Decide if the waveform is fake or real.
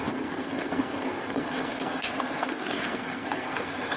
fake